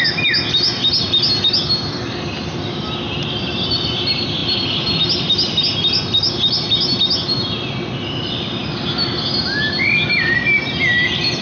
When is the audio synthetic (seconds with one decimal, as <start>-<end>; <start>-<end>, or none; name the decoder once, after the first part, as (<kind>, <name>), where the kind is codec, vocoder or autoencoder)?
none